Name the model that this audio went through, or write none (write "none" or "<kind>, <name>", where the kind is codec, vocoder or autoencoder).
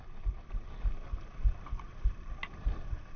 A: none